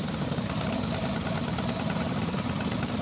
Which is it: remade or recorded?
recorded